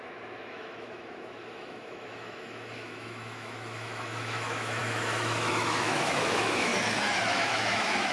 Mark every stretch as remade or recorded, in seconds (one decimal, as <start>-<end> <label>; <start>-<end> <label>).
0.0-6.7 remade; 6.7-7.2 recorded; 7.2-8.1 remade